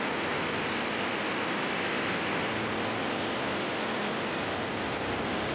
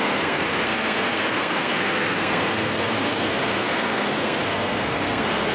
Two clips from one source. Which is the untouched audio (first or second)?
first